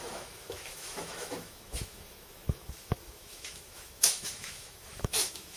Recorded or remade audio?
remade